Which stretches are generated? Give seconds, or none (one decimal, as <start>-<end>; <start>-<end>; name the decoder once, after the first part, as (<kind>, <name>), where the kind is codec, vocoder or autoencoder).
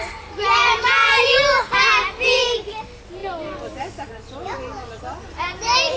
none